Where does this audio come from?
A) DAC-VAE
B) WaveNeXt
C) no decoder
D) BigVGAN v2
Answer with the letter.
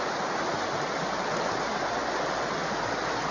C